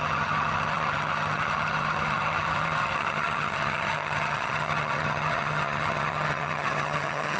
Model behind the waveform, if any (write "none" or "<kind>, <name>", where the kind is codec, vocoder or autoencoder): vocoder, HiFi-GAN